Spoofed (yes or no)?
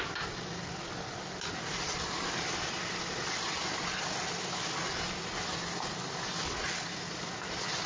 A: no